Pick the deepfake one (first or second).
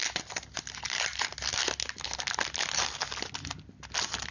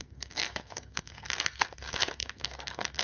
second